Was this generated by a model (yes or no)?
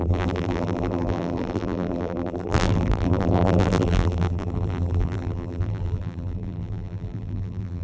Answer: yes